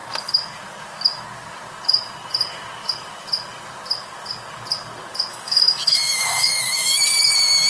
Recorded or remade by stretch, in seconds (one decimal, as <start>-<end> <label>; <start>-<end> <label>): 0.0-5.3 recorded; 5.3-7.0 remade; 7.0-7.7 recorded